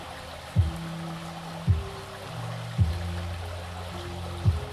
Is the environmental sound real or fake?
real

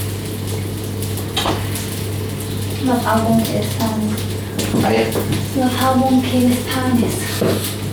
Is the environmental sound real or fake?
real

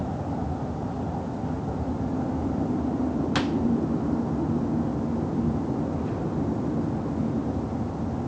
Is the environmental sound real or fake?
real